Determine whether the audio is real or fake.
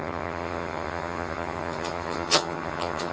fake